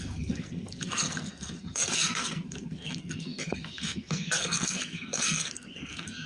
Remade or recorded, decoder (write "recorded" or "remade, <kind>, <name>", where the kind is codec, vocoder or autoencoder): remade, codec, SNAC